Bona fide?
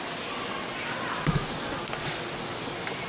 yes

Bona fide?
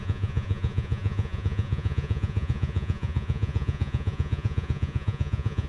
no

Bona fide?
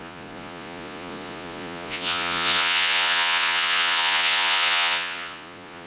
no